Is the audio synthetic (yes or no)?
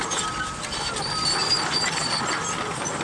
no